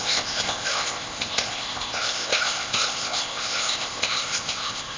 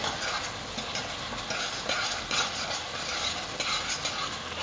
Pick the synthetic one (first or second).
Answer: first